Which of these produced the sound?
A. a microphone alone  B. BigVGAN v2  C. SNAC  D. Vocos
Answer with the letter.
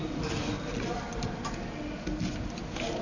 A